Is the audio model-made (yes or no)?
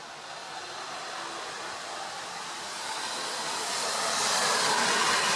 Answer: no